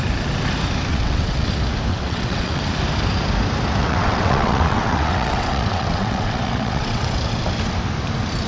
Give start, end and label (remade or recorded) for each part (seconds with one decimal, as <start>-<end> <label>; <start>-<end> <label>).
0.0-0.9 recorded; 0.9-1.5 remade; 1.5-1.9 recorded; 1.9-2.6 remade; 2.6-3.8 recorded; 3.8-7.2 remade; 7.2-8.5 recorded